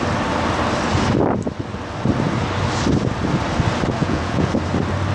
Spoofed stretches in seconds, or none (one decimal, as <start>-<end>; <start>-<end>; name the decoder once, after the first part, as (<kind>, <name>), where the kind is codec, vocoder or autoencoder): 4.0-4.5 (vocoder, Vocos)